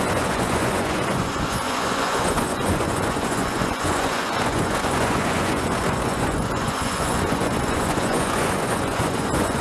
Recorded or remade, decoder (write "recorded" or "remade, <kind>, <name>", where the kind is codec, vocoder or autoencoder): remade, vocoder, Vocos